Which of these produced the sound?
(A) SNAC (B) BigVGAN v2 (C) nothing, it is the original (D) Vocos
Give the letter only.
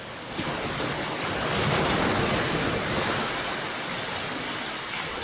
C